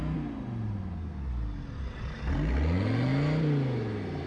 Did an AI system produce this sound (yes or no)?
no